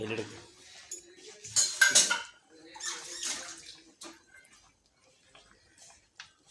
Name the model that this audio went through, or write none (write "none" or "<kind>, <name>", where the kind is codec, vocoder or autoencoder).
none